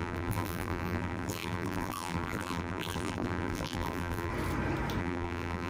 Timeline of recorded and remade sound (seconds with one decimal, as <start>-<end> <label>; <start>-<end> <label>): 0.0-4.3 remade; 4.3-5.0 recorded; 5.0-5.7 remade